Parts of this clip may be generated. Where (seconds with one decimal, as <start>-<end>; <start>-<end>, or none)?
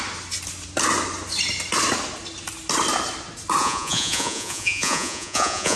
3.6-5.8